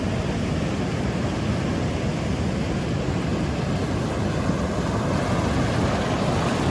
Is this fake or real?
real